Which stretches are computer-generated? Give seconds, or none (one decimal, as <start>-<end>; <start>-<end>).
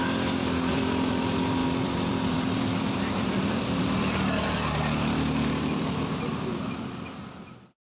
0.4-1.1; 1.6-6.0